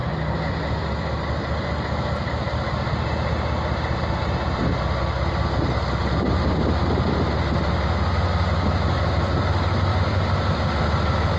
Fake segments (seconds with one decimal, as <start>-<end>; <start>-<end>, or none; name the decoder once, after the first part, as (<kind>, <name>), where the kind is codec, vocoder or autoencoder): 0.0-1.2 (vocoder, BigVGAN v2); 9.9-10.8